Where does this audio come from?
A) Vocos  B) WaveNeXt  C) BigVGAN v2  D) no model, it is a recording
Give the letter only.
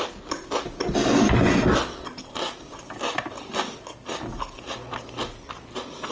D